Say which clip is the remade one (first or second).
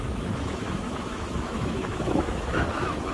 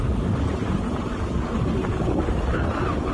first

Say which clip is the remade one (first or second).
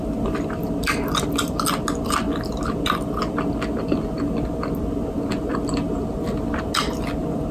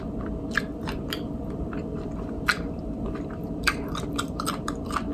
second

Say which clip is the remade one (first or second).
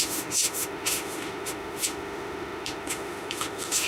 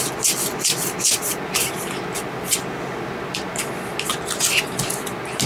first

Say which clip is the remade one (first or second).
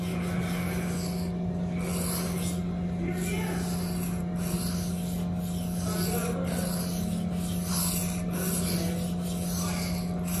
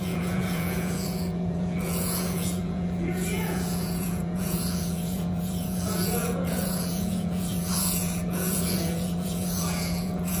second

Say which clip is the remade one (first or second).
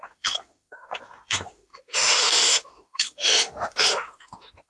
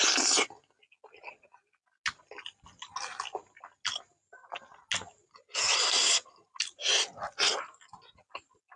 first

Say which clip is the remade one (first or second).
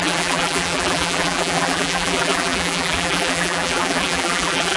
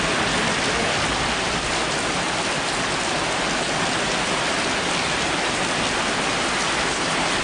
first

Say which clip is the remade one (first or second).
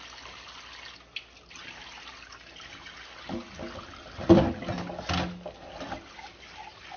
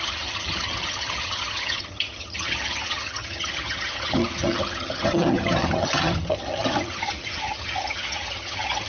second